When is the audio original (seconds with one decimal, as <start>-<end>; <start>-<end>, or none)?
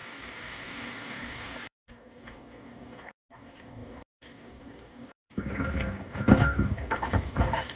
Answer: none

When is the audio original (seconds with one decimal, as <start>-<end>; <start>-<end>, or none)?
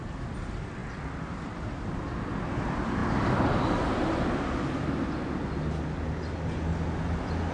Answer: 0.0-7.5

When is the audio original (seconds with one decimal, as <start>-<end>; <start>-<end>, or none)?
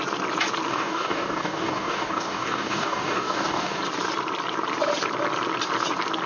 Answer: 0.0-0.7; 3.8-6.3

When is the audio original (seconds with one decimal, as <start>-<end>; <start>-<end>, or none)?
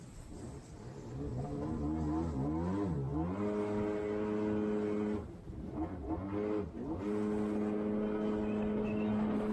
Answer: 0.0-9.5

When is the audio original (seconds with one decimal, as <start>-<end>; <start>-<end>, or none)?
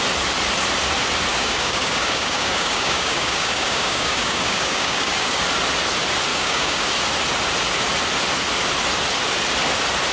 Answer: 0.0-1.3; 5.4-6.3; 6.9-10.1